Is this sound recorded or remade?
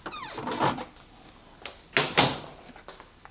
recorded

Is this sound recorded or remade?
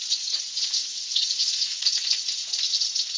remade